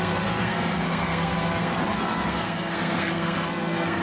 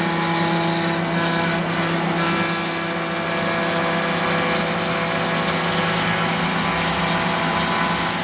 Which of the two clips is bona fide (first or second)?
second